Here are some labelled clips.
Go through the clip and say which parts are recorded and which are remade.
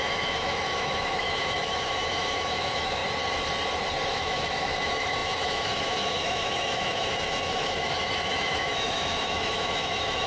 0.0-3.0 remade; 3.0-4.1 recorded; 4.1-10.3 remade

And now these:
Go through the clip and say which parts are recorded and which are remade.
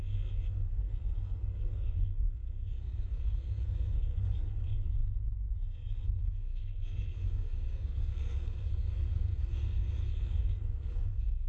0.0-11.5 remade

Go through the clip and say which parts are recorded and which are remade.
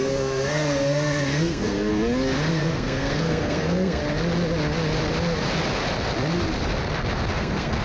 0.0-1.9 remade; 1.9-2.5 recorded; 2.5-4.0 remade; 4.0-7.3 recorded; 7.3-7.8 remade